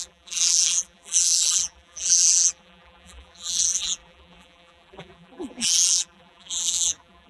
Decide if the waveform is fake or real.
fake